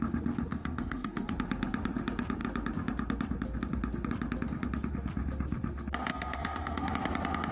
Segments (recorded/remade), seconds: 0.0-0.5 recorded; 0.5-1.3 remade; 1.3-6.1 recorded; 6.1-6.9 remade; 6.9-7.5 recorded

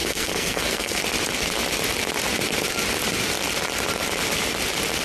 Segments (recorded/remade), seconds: 0.0-1.0 remade; 1.0-5.0 recorded

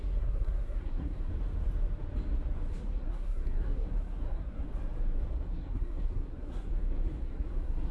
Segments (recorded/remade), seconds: 0.0-1.3 remade; 1.3-2.7 recorded; 2.7-4.7 remade; 4.7-5.3 recorded; 5.3-6.7 remade; 6.7-7.2 recorded; 7.2-7.9 remade

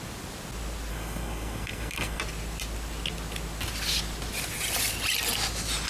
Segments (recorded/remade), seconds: 0.0-0.9 recorded; 0.9-2.2 remade; 2.2-5.9 recorded

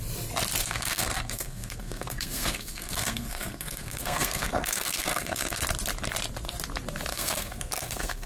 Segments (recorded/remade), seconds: 0.0-0.6 recorded; 0.6-5.6 remade; 5.6-7.1 recorded; 7.1-8.3 remade